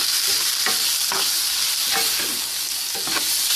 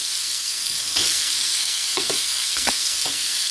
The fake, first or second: second